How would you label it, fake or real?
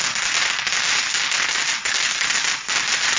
real